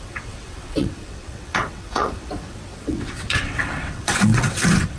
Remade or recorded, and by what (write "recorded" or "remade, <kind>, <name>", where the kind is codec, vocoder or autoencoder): remade, vocoder, WaveNeXt